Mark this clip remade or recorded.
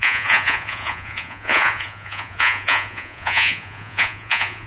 remade